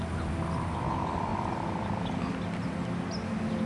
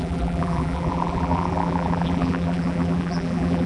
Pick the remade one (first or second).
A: second